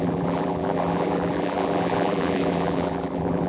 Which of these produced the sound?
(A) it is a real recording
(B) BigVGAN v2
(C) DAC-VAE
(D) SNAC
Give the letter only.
B